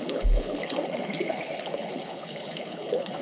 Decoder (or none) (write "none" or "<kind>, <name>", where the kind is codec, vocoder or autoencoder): codec, HILCodec